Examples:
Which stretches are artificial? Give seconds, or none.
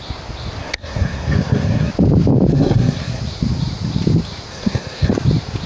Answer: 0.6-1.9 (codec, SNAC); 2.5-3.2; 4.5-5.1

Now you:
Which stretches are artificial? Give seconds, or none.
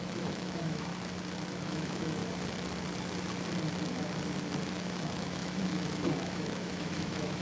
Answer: 0.0-0.9 (autoencoder, DAC-VAE); 1.5-2.2; 4.6-7.4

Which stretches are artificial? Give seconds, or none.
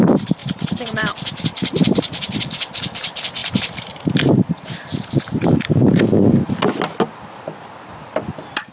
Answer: 0.4-2.3 (vocoder, BigVGAN v2); 3.4-6.1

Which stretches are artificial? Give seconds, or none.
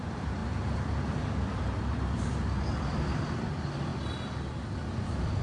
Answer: none